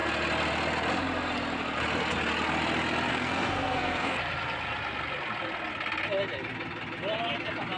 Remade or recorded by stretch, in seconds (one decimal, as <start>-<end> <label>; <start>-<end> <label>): 0.0-3.1 recorded; 3.1-4.2 remade; 4.2-7.8 recorded